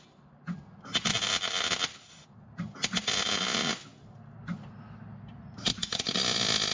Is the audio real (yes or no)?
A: yes